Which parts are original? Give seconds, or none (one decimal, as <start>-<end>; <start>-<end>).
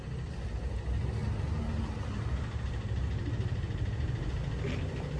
0.0-5.2